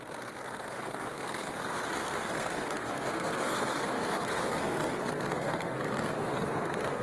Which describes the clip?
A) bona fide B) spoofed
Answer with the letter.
B